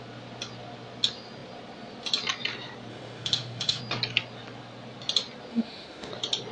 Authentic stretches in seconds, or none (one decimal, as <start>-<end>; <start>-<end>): 0.0-2.9; 3.8-5.5; 6.1-6.5